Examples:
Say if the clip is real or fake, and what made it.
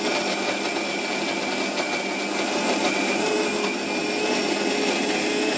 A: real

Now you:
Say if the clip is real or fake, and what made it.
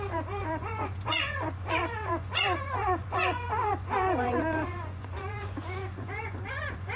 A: fake, vocoder, Vocos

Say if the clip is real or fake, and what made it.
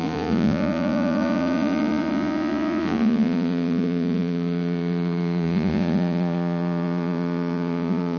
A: fake, vocoder, Vocos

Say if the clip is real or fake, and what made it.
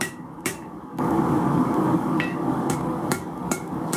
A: fake, codec, DAC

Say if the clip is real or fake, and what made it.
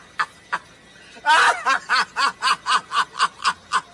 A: real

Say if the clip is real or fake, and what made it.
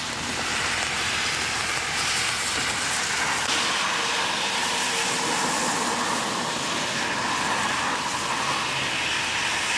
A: real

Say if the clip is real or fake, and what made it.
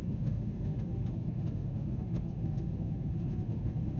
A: fake, autoencoder, DAC-VAE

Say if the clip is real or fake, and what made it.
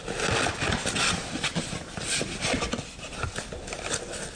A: real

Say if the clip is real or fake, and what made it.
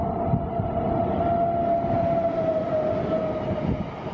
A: real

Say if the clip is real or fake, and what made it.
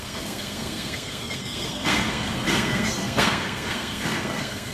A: fake, codec, SNAC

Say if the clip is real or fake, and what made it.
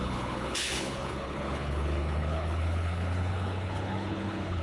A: fake, codec, HILCodec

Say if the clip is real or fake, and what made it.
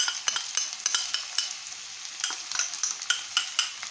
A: real